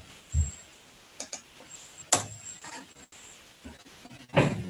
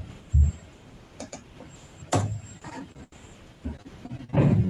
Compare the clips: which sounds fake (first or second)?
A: second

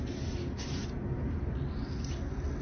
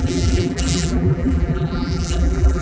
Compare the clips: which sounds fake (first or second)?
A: second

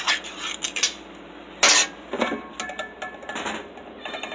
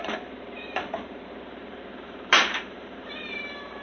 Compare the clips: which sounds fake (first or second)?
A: second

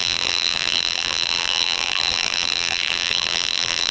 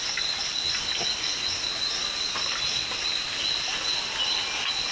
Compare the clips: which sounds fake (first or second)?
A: first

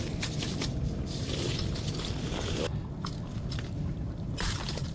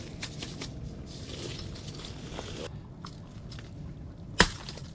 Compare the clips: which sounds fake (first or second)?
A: first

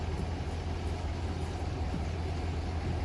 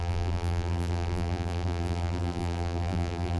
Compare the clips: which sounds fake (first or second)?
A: second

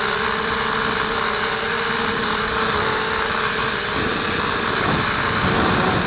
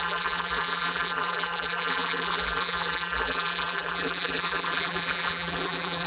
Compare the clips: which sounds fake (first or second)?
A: second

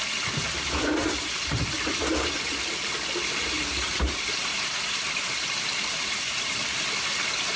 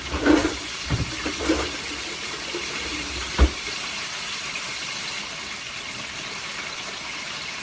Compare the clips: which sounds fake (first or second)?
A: first